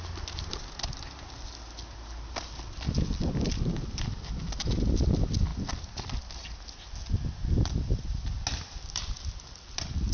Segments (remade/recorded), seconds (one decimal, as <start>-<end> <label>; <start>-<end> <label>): 0.0-10.1 recorded